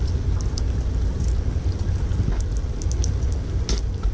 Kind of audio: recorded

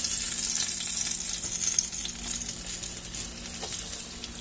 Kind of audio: recorded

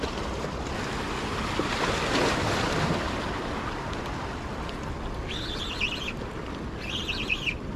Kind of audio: recorded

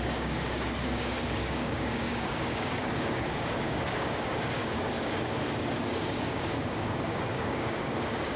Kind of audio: remade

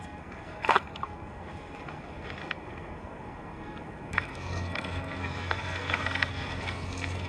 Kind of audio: remade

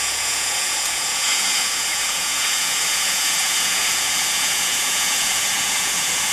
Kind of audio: remade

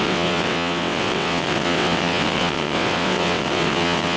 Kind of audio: remade